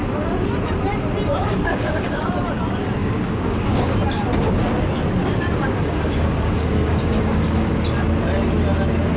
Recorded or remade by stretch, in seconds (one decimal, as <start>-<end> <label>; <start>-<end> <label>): 0.0-1.4 recorded; 1.4-2.3 remade; 2.3-3.0 recorded; 3.0-3.8 remade; 3.8-5.2 recorded; 5.2-7.7 remade; 7.7-9.2 recorded